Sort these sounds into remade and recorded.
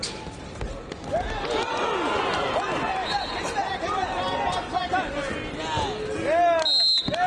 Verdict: recorded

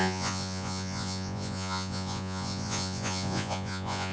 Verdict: remade